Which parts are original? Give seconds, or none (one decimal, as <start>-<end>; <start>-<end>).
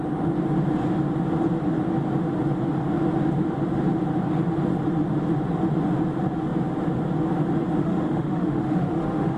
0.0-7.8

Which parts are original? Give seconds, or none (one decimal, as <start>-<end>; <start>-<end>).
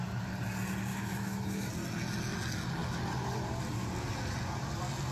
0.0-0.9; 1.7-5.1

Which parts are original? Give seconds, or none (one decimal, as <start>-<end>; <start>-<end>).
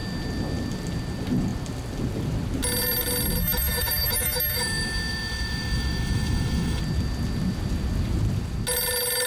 0.0-3.4; 6.8-9.3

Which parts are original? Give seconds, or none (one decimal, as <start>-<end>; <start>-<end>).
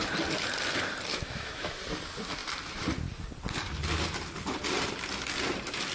0.0-1.1; 1.8-5.9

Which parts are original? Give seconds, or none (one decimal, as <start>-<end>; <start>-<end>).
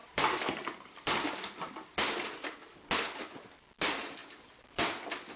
0.0-5.4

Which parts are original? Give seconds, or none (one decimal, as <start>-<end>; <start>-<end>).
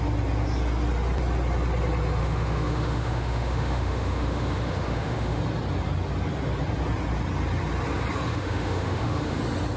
0.0-2.2; 5.4-8.3; 9.4-9.8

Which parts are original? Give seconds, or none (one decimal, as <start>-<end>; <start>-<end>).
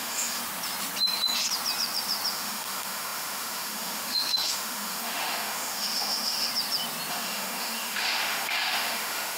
0.4-2.3; 6.5-7.1